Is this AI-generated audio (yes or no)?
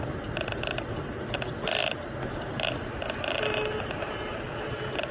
no